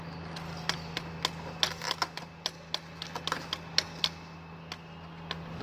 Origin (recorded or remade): recorded